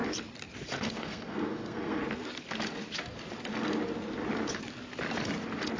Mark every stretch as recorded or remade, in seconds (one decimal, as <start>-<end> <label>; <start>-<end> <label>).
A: 0.0-0.6 recorded; 0.6-2.0 remade; 2.0-5.8 recorded